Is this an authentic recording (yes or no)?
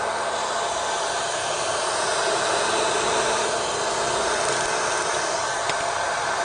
yes